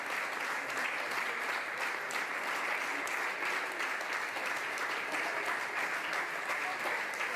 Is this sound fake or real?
real